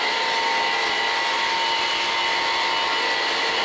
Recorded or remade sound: recorded